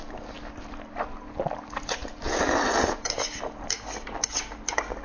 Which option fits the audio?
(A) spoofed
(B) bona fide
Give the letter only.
B